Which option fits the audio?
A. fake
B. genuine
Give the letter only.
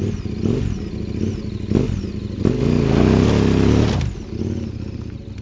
B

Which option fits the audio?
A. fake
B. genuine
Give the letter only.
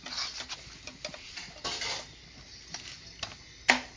B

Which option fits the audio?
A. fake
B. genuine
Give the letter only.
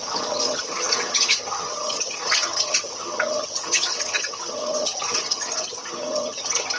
A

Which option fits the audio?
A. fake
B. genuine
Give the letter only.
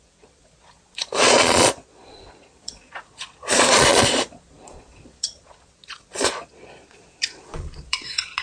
A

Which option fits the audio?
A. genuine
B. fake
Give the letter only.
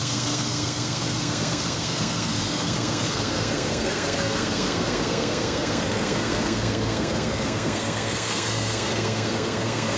B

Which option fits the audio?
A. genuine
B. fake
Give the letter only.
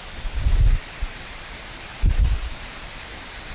B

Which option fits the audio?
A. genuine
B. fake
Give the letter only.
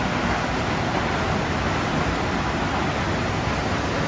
A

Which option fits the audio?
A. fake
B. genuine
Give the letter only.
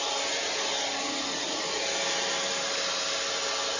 B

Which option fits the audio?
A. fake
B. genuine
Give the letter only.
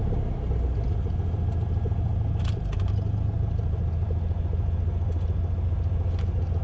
B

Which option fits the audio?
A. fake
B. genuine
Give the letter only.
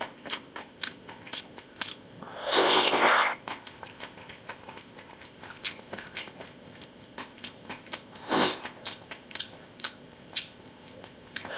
A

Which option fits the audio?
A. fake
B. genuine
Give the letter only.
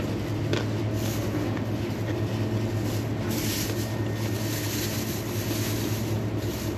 B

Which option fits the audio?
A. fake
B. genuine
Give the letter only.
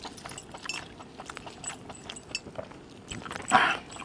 B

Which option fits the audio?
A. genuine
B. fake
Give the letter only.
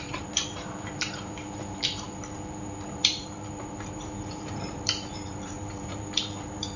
B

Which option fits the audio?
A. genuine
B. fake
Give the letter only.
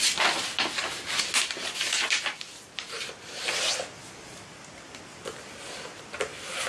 A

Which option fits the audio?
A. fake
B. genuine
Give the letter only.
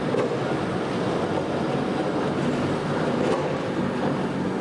B